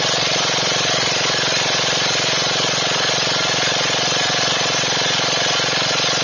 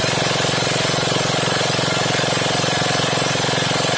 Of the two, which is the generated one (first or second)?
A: first